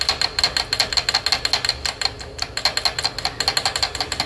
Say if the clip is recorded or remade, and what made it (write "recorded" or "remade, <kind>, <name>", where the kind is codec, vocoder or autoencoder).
recorded